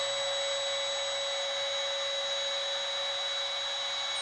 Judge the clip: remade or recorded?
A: recorded